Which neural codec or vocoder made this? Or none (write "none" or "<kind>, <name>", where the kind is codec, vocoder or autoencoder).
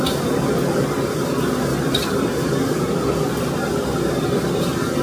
none